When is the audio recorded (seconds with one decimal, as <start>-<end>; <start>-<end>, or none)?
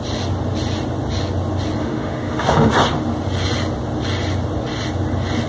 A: 0.0-1.8; 2.7-5.5